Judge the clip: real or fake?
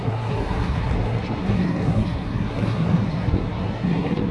fake